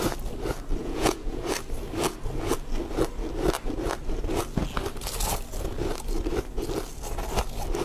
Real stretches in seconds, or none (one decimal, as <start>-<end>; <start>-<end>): 0.0-0.8; 1.4-7.8

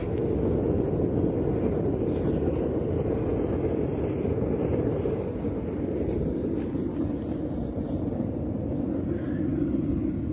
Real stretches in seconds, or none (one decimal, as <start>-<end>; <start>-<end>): 0.0-10.3

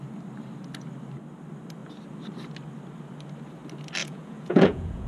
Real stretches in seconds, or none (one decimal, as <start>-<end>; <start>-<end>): 0.0-4.0

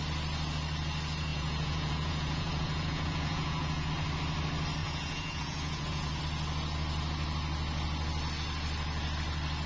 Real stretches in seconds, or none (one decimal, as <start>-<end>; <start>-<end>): 0.0-1.3; 3.9-4.8; 6.2-9.7

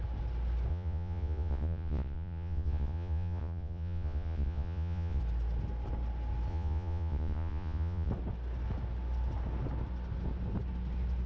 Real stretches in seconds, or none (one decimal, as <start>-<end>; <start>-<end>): 0.0-0.7; 5.2-6.5; 8.1-11.3

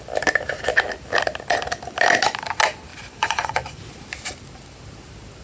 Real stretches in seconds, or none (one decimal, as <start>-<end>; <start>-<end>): 0.0-2.9; 3.8-5.4